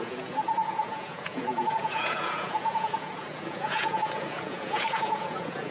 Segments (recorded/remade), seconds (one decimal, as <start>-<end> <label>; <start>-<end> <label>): 0.0-5.7 remade